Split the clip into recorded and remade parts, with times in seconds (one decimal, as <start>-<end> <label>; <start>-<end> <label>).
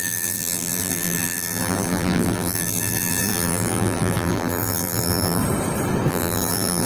0.0-5.4 remade; 5.4-6.1 recorded; 6.1-6.9 remade